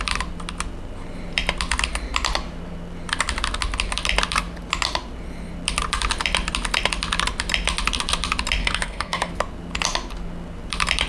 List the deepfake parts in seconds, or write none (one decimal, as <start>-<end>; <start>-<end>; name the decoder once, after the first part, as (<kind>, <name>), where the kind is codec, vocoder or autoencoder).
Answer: 8.6-9.3 (codec, SNAC)